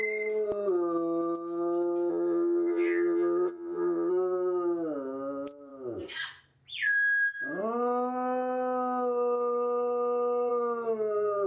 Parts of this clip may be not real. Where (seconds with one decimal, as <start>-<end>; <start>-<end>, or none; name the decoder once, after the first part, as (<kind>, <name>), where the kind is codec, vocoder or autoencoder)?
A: 2.1-4.1 (vocoder, HiFi-GAN)